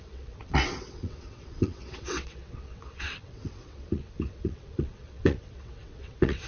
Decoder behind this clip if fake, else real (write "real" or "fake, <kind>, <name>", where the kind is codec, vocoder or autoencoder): fake, vocoder, WaveNeXt